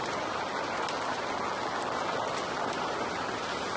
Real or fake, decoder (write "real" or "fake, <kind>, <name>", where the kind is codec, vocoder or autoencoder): real